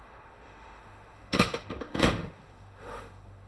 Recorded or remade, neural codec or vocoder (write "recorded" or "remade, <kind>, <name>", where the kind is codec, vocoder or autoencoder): remade, autoencoder, DAC-VAE